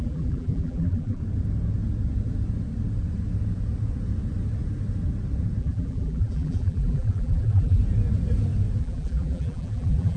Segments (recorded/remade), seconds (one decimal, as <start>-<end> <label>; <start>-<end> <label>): 0.0-1.2 remade; 1.2-5.6 recorded; 5.6-7.8 remade; 7.8-8.8 recorded; 8.8-10.2 remade